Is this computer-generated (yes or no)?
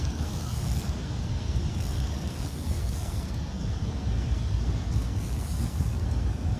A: yes